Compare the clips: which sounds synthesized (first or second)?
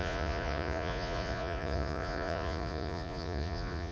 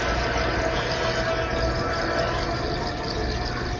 first